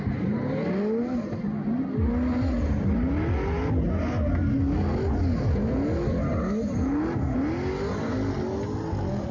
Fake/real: real